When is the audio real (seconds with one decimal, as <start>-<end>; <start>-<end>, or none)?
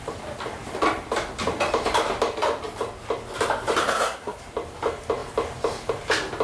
0.0-3.8; 4.4-6.4